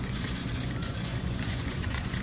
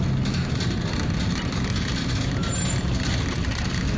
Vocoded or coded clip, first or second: first